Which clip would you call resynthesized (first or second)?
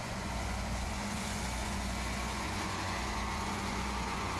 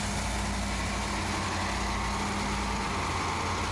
first